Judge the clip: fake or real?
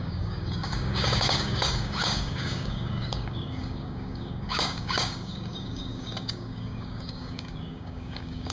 fake